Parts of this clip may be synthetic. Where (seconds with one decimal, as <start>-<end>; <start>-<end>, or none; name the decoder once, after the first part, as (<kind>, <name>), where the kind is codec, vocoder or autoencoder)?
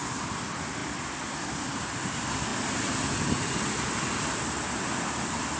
none